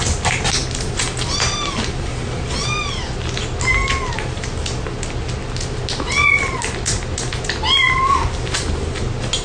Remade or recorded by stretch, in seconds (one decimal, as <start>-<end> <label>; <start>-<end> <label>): 0.0-9.4 recorded